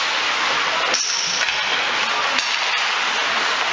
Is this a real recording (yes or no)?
yes